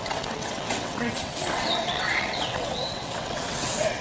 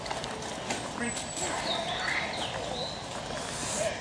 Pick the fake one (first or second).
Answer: first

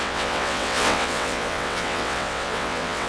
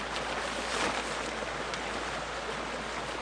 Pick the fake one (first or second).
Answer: first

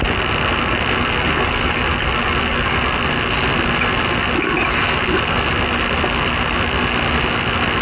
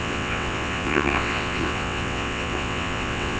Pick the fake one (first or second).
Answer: second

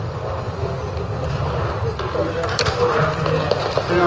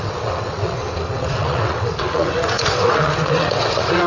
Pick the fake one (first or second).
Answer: second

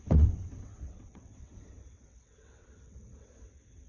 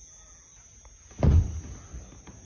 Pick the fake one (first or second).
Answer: first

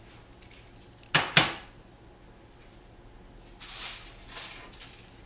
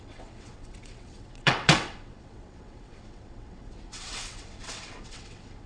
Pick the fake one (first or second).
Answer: second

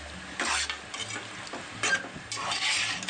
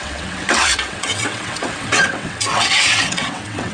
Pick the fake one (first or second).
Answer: second